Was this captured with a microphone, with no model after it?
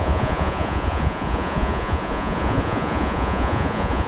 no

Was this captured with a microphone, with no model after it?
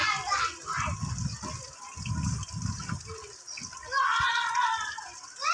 yes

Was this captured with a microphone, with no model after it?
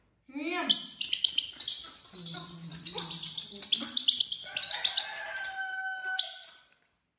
yes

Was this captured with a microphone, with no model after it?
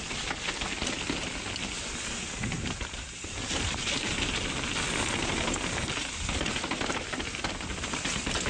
yes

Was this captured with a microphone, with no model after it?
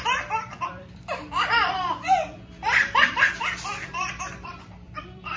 no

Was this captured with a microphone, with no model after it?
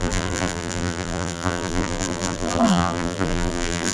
no